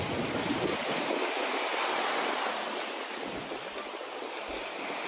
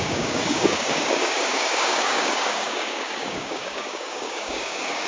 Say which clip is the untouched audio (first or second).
first